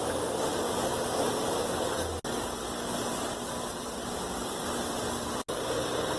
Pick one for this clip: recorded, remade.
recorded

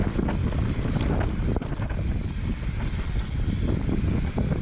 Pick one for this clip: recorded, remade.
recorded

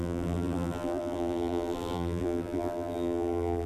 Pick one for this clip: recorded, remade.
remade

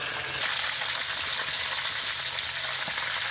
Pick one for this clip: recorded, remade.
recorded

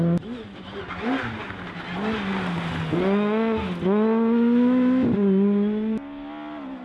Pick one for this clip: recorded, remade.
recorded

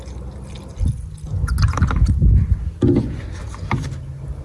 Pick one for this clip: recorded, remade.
recorded